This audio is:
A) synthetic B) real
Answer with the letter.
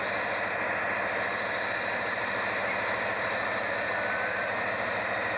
B